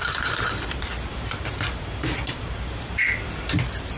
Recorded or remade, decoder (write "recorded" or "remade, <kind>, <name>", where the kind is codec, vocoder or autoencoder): remade, vocoder, BigVGAN v2